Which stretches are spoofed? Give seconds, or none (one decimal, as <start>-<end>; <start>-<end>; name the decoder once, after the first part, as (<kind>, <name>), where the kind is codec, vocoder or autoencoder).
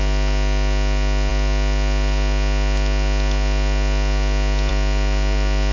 none